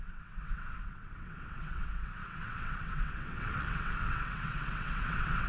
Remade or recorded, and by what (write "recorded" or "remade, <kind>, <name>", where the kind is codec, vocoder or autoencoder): remade, vocoder, WaveNeXt